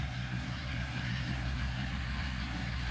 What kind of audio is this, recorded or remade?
remade